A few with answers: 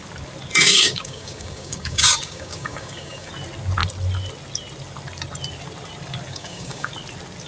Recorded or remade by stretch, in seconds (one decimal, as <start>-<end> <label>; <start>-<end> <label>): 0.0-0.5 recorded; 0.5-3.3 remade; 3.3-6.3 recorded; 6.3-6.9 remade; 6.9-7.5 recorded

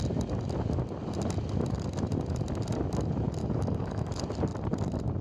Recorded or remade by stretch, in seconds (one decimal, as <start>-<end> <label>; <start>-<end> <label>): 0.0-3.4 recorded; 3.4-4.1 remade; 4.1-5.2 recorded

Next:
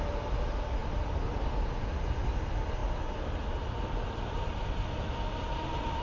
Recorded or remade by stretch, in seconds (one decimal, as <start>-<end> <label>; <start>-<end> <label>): 0.0-6.0 recorded

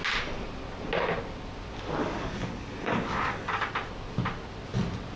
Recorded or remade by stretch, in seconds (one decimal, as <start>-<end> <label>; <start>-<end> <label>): 0.0-2.0 recorded; 2.0-3.7 remade; 3.7-5.2 recorded

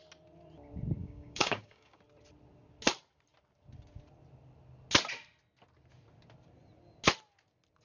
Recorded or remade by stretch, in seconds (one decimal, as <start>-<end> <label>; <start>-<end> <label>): 0.0-1.0 recorded; 1.0-2.0 remade; 2.0-7.8 recorded

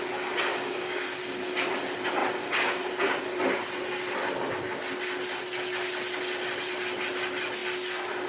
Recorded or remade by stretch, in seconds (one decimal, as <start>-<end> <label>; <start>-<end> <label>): 0.0-0.5 recorded; 0.5-1.2 remade; 1.2-8.3 recorded

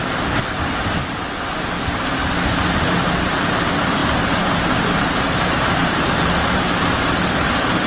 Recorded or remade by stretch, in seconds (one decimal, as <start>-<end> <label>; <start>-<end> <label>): 0.0-7.9 recorded